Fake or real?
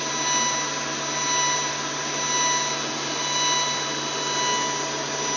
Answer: real